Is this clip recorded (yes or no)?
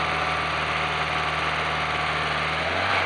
yes